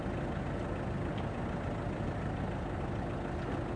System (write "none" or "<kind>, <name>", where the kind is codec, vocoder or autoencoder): none